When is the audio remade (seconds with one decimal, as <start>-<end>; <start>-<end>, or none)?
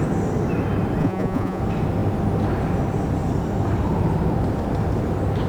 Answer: 1.0-1.6